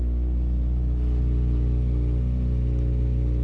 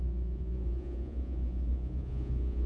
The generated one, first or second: second